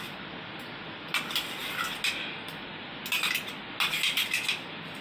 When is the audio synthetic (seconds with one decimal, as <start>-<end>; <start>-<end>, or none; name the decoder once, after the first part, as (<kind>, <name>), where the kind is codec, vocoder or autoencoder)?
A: none